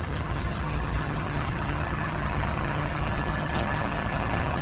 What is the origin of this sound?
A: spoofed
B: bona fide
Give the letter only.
A